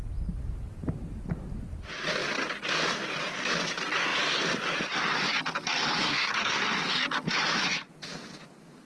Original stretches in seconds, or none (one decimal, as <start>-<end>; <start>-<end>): 0.0-6.0; 6.6-8.9